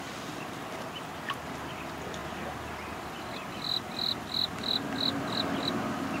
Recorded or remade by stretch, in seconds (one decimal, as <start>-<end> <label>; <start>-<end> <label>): 0.0-6.2 recorded